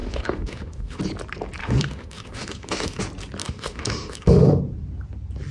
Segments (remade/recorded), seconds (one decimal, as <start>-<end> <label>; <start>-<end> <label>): 0.0-1.0 remade; 1.0-1.6 recorded; 1.6-3.0 remade; 3.0-3.4 recorded; 3.4-4.6 remade; 4.6-5.5 recorded